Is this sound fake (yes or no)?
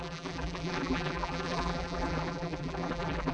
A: yes